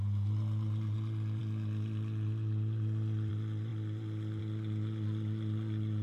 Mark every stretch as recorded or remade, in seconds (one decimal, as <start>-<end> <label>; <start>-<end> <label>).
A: 0.0-6.0 recorded